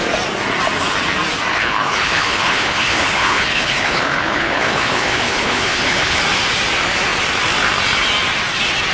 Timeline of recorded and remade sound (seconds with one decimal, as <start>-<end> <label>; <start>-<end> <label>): 0.0-1.5 recorded; 1.5-6.2 remade; 6.2-8.9 recorded